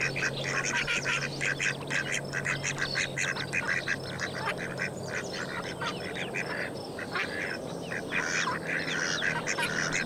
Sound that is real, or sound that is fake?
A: real